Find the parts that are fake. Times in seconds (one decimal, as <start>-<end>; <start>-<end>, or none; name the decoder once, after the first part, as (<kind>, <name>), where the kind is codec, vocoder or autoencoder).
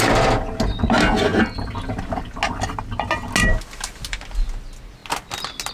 none